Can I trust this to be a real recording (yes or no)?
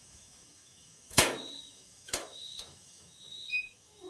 no